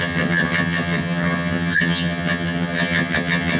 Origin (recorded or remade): remade